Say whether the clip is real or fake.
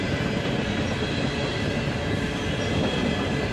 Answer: real